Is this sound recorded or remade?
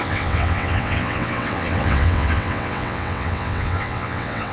remade